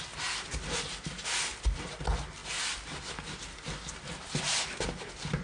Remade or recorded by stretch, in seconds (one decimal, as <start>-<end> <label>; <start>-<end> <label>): 0.0-5.4 recorded